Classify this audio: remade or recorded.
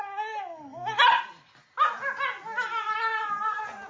recorded